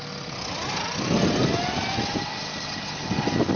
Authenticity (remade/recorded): recorded